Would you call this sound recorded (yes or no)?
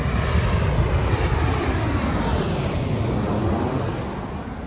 yes